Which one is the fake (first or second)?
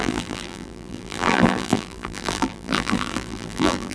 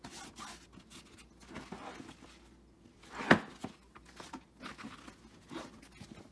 first